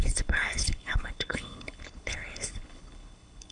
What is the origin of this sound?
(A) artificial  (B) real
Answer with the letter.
A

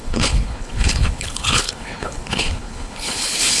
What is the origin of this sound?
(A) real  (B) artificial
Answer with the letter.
B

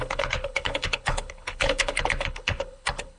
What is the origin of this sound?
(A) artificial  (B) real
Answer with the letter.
A